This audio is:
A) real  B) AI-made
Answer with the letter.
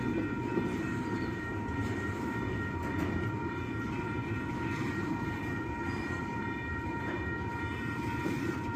B